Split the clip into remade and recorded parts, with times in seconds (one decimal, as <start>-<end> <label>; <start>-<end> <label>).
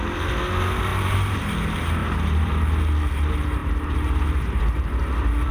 0.0-2.0 recorded; 2.0-2.5 remade; 2.5-3.6 recorded; 3.6-4.9 remade; 4.9-5.5 recorded